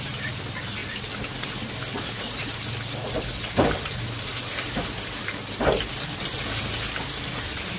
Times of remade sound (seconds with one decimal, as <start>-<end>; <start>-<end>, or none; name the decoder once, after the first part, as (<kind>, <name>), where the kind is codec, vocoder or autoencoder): none